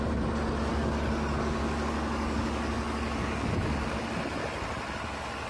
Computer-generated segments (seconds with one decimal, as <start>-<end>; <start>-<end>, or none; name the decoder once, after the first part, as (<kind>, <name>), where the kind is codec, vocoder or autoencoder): 0.7-4.0 (codec, DAC)